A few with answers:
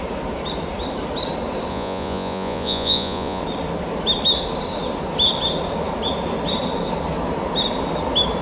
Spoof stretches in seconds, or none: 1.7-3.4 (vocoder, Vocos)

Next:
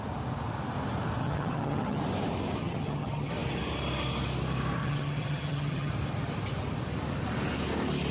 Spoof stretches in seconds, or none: 1.2-2.0 (vocoder, HiFi-GAN); 2.6-3.3; 4.8-5.9

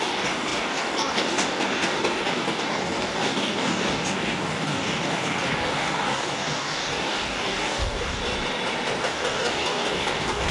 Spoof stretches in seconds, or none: 0.0-8.2 (codec, DAC); 9.0-10.5

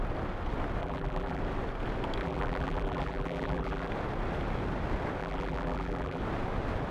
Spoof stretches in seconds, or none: 0.8-1.4 (vocoder, BigVGAN v2); 2.2-3.9; 5.2-6.2

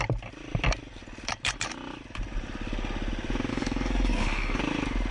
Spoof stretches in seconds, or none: 3.5-4.6 (codec, DAC)

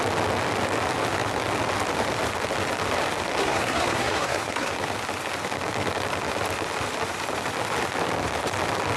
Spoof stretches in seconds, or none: 3.4-4.7 (codec, SNAC)

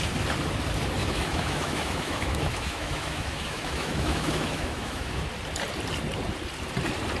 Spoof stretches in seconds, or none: 1.0-5.2 (autoencoder, DAC-VAE)

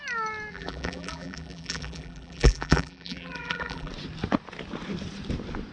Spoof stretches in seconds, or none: 0.5-3.9 (vocoder, BigVGAN v2)